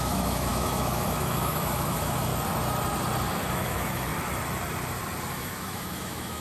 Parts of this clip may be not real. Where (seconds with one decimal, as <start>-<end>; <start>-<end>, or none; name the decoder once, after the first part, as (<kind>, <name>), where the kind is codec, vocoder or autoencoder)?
0.0-2.3 (autoencoder, DAC-VAE); 3.5-4.1; 5.3-6.4